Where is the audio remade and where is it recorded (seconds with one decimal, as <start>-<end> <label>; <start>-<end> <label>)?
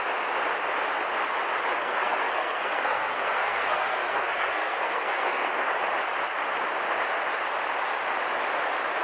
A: 0.0-1.8 recorded; 1.8-5.5 remade; 5.5-9.0 recorded